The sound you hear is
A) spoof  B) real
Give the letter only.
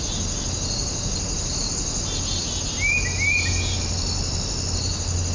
B